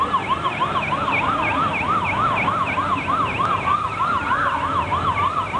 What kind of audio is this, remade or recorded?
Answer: recorded